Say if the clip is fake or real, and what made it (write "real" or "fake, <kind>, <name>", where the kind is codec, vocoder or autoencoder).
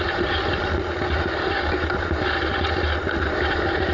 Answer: real